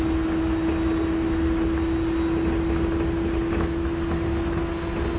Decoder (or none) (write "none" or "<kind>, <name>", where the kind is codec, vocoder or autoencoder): none